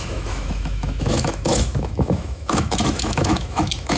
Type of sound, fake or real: fake